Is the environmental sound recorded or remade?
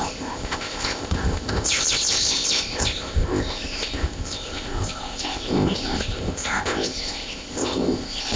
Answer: remade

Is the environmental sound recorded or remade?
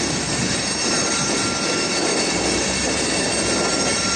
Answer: recorded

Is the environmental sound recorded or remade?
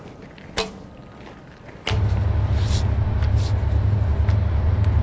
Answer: recorded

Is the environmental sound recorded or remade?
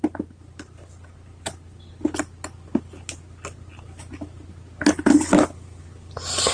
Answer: recorded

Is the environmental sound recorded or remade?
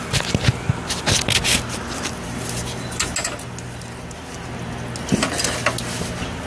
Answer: recorded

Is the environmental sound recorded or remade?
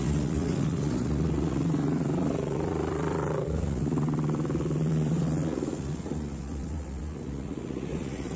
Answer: remade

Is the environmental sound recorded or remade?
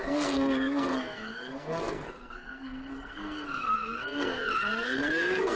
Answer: remade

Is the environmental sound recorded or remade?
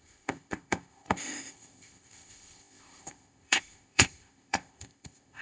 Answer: remade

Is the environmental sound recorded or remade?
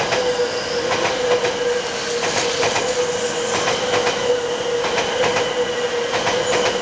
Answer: recorded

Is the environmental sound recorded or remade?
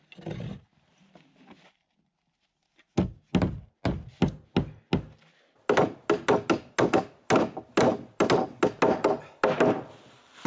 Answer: recorded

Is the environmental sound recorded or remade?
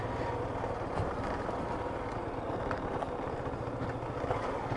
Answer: recorded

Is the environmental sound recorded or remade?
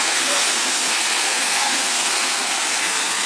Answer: remade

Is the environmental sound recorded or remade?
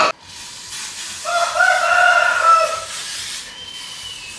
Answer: recorded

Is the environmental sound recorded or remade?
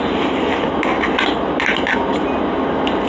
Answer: recorded